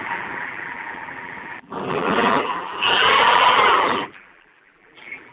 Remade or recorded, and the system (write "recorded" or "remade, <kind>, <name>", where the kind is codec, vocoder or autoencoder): remade, vocoder, BigVGAN v2